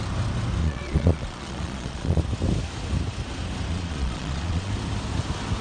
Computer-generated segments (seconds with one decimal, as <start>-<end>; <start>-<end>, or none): 0.6-2.2; 3.7-4.7